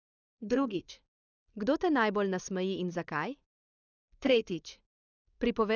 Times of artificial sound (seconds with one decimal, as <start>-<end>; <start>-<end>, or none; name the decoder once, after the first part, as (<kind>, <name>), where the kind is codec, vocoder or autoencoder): 0.0-0.9 (codec, SNAC); 3.9-4.6

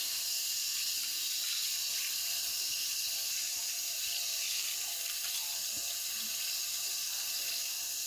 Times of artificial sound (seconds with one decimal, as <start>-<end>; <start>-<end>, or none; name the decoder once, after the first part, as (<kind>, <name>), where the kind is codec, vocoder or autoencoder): none

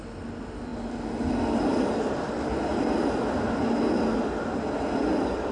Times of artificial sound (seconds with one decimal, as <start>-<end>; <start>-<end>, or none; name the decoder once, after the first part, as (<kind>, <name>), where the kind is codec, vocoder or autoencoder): none

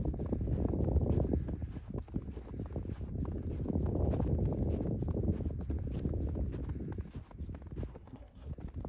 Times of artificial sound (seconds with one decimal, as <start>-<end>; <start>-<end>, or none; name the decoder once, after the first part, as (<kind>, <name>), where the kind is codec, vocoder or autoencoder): 7.9-8.5 (codec, SNAC)

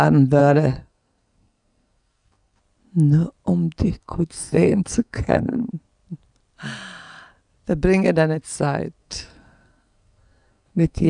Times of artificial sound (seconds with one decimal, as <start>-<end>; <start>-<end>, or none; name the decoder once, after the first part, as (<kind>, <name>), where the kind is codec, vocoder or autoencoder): 0.4-2.6 (codec, SNAC); 3.8-5.7; 9.0-11.1

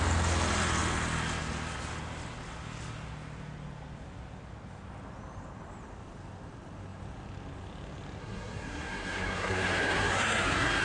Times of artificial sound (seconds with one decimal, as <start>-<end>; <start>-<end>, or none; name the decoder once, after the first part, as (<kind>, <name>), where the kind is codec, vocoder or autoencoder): 8.2-10.8 (codec, SNAC)

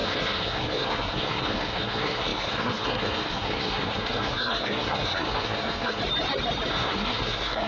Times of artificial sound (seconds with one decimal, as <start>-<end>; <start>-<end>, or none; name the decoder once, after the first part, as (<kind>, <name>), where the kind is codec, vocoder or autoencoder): 0.0-6.0 (codec, SNAC); 6.7-7.7

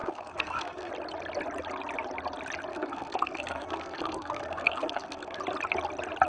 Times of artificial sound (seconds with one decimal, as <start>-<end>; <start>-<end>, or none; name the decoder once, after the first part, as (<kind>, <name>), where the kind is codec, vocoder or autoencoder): 0.0-0.9 (codec, SNAC); 2.7-5.4